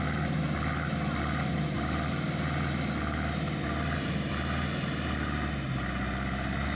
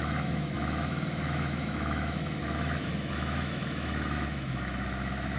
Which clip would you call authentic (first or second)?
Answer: first